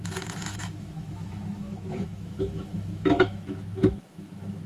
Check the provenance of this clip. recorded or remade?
remade